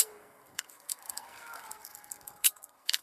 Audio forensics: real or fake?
fake